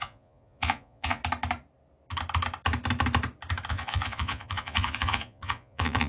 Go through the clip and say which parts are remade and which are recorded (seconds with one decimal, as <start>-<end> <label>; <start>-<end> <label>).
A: 0.0-1.2 remade; 1.2-3.7 recorded; 3.7-6.1 remade